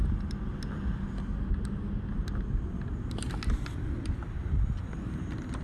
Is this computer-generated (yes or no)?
no